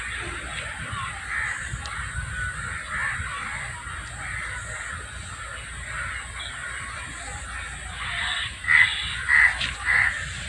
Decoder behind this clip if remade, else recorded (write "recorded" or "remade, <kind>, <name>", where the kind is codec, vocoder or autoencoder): recorded